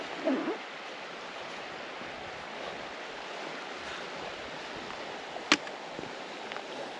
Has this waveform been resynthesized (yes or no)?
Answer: no